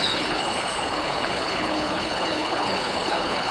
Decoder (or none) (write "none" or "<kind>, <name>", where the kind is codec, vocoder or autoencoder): codec, HILCodec